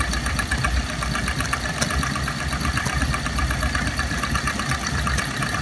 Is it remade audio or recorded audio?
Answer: recorded